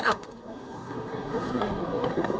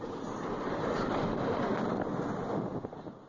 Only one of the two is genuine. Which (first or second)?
second